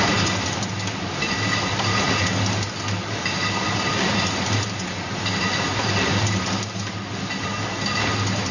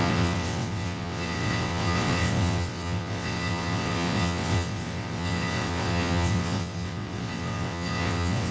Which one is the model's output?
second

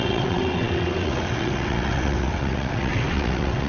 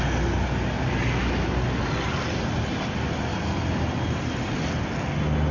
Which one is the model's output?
first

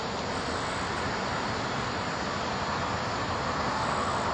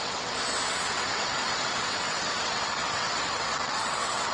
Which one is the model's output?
second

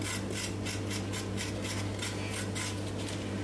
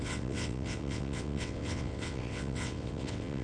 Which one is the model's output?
second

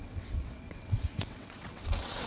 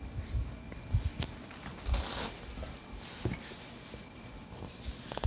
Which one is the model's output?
first